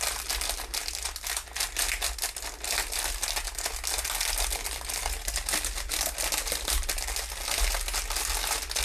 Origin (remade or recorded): recorded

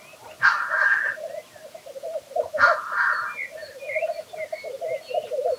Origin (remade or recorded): recorded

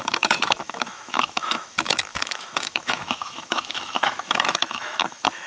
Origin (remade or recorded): remade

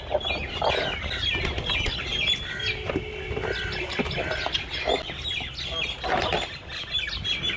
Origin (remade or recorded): recorded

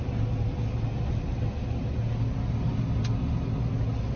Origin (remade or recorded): recorded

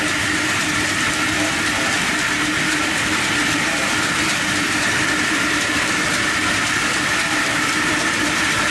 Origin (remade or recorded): remade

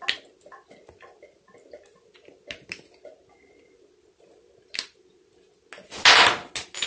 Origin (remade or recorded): recorded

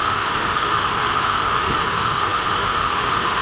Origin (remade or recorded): remade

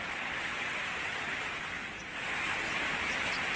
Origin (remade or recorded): recorded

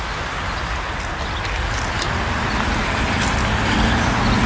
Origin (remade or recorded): recorded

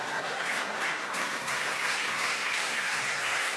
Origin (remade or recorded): remade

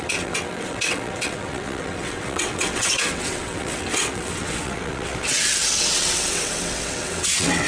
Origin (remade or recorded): remade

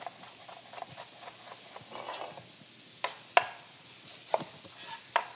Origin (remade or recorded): recorded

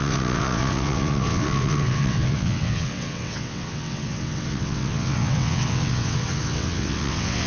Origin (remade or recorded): remade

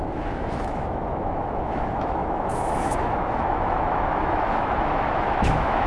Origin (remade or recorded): remade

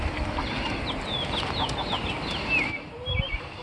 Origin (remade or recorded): recorded